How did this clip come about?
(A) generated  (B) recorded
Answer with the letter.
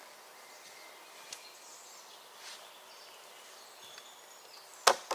B